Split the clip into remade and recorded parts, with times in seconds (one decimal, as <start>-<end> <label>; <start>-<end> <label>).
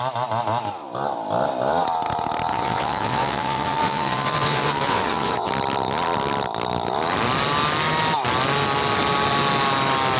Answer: 0.0-2.5 recorded; 2.5-5.5 remade; 5.5-10.2 recorded